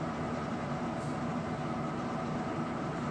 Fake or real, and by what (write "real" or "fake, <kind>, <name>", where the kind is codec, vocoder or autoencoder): real